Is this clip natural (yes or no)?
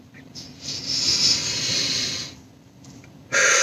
yes